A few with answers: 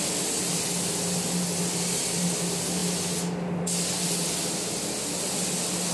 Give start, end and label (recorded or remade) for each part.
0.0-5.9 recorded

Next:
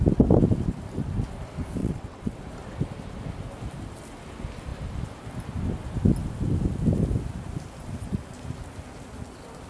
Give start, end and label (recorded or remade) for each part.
0.0-1.8 recorded; 1.8-2.4 remade; 2.4-9.7 recorded

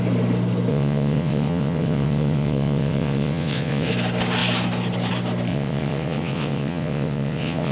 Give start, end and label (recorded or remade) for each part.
0.0-0.7 recorded; 0.7-3.9 remade; 3.9-5.5 recorded; 5.5-7.7 remade

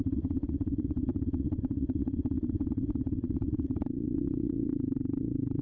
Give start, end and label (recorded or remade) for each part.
0.0-5.6 remade

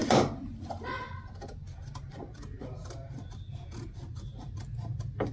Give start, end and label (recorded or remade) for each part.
0.0-5.3 recorded

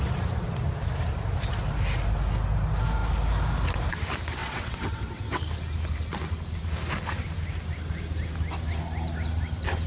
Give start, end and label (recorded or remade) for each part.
0.0-4.4 recorded; 4.4-5.4 remade; 5.4-9.9 recorded

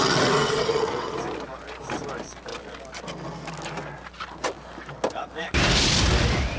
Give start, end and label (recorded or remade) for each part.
0.0-1.1 remade; 1.1-6.6 recorded